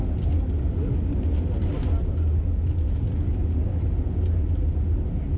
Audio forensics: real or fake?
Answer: real